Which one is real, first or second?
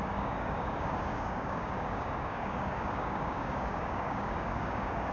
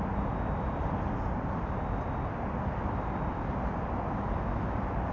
second